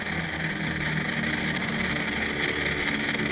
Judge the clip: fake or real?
real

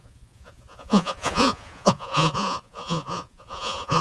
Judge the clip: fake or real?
fake